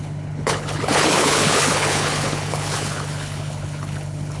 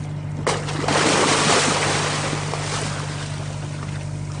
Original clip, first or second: second